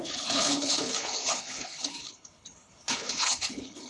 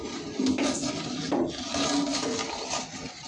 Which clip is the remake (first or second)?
first